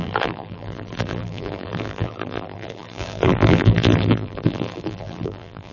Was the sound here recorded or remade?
remade